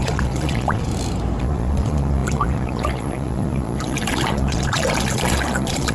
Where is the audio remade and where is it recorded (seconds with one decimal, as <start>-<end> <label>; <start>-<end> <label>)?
0.0-0.9 remade; 0.9-1.4 recorded; 1.4-5.9 remade